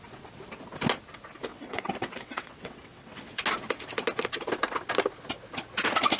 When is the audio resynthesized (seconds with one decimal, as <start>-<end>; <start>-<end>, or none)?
1.5-3.4

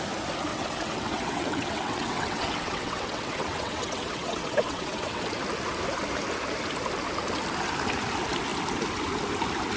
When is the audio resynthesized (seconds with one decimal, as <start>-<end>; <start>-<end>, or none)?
0.5-5.2